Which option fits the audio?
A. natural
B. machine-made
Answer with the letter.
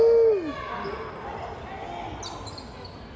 A